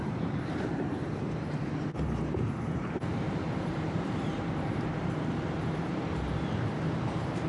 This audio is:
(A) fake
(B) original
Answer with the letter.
A